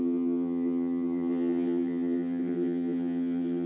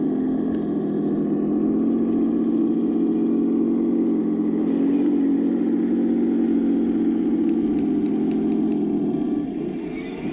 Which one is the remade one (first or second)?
first